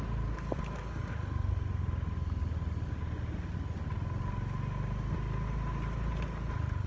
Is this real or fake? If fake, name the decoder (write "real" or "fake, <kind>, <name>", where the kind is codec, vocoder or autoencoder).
real